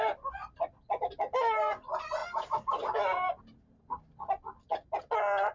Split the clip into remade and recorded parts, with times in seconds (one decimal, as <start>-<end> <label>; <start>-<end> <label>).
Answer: 0.0-5.5 recorded